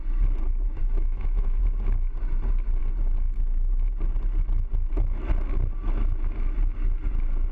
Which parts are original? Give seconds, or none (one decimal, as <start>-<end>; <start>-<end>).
0.0-0.8; 1.6-7.5